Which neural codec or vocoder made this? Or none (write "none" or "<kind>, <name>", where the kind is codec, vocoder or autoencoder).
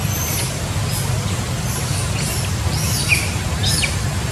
none